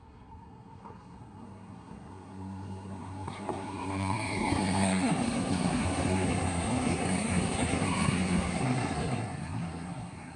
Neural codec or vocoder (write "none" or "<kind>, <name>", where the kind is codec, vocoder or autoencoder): codec, SNAC